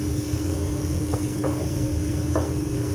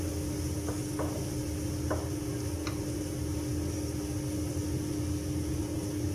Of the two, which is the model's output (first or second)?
first